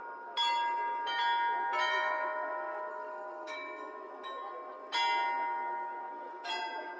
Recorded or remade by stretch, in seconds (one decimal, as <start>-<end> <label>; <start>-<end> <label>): 0.0-2.9 recorded; 2.9-3.8 remade; 3.8-7.0 recorded